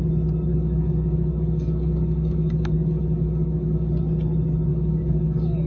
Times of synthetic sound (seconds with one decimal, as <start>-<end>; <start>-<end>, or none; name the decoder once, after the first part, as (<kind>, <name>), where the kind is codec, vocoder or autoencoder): 0.5-3.9 (codec, DAC); 4.7-5.7